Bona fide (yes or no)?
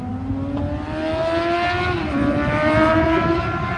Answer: yes